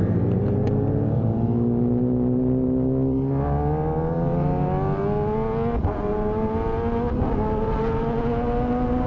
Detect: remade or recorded recorded